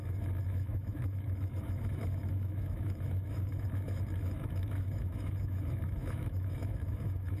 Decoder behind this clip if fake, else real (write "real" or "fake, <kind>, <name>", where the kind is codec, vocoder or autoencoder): fake, autoencoder, DAC-VAE